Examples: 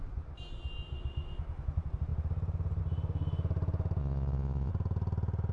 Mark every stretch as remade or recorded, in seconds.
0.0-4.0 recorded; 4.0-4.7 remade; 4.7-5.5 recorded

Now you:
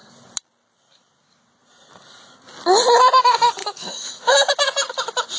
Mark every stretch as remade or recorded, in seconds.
0.0-3.6 recorded; 3.6-4.5 remade; 4.5-5.4 recorded

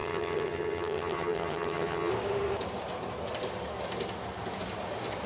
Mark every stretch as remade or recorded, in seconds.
0.0-2.1 remade; 2.1-5.3 recorded

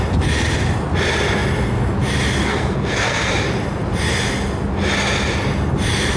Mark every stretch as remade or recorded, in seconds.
0.0-2.5 recorded; 2.5-3.3 remade; 3.3-6.2 recorded

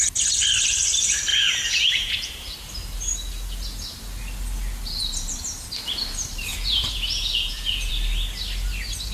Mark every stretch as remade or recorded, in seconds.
0.0-1.3 recorded; 1.3-2.3 remade; 2.3-6.5 recorded; 6.5-7.9 remade; 7.9-9.1 recorded

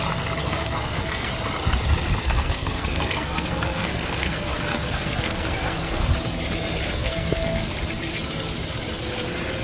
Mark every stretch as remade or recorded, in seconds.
0.0-0.4 recorded; 0.4-1.3 remade; 1.3-2.2 recorded; 2.2-6.1 remade; 6.1-7.0 recorded; 7.0-7.7 remade; 7.7-9.6 recorded

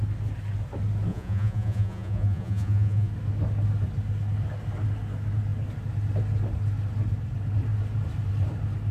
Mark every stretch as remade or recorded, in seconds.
0.0-1.1 recorded; 1.1-3.1 remade; 3.1-8.9 recorded